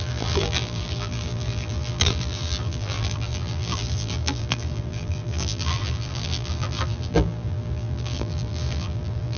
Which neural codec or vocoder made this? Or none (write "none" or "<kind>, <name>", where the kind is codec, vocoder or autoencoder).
vocoder, BigVGAN v2